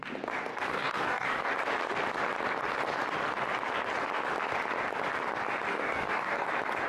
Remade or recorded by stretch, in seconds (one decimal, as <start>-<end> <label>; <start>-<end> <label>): 0.0-0.5 recorded; 0.5-1.5 remade; 1.5-5.7 recorded; 5.7-6.5 remade; 6.5-6.9 recorded